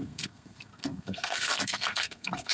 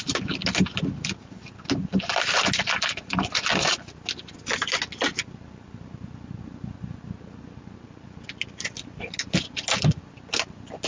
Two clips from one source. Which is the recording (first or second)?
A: second